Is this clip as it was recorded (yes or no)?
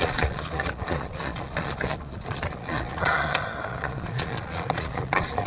no